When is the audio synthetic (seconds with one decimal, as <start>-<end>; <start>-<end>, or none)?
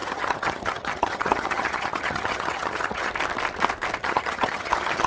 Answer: 0.0-3.1; 4.0-5.1